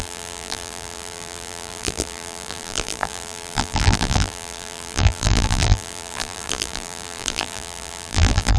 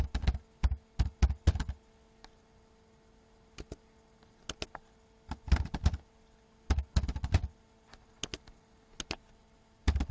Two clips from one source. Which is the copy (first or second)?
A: first